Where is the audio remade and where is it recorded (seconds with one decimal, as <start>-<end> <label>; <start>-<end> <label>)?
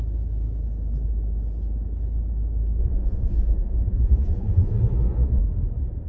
0.0-2.8 recorded; 2.8-5.4 remade; 5.4-6.1 recorded